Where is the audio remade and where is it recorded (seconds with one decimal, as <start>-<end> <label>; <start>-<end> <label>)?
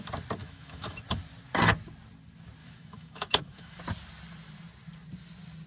0.0-0.4 recorded; 0.4-1.0 remade; 1.0-2.6 recorded; 2.6-3.8 remade; 3.8-5.7 recorded